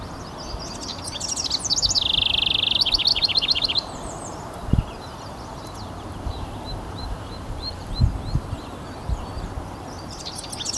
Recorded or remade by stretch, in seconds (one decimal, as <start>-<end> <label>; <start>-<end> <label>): 0.0-3.1 recorded; 3.1-8.0 remade; 8.0-10.8 recorded